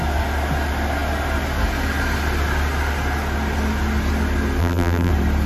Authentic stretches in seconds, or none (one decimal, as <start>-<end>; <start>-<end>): 0.0-4.6; 5.1-5.5

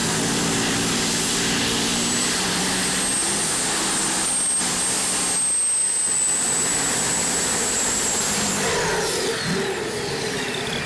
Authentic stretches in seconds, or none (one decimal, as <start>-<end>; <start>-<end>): 1.3-1.9; 2.7-5.8; 8.5-10.9

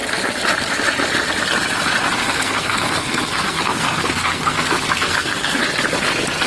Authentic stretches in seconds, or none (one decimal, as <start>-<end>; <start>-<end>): 0.0-2.2; 5.6-6.5

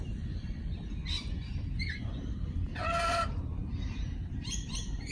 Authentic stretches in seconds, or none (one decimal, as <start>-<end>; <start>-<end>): 0.0-5.1

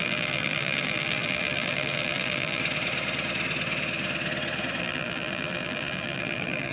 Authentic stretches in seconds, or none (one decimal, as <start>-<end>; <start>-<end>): 2.6-4.8

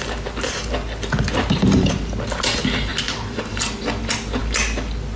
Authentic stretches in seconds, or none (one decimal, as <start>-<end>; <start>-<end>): 0.0-5.2

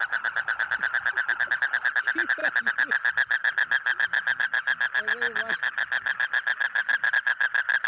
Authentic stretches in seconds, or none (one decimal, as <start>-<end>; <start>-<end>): 0.0-7.9

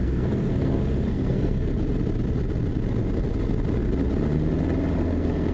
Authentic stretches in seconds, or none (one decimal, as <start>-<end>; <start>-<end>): 1.7-5.0